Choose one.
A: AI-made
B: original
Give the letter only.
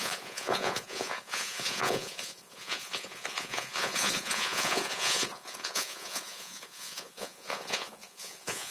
A